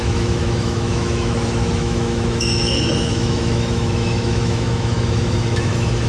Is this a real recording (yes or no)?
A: no